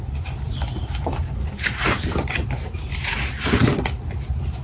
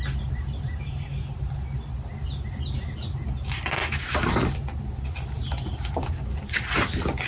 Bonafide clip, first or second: second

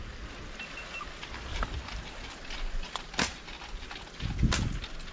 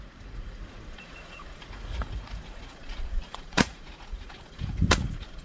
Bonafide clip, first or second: first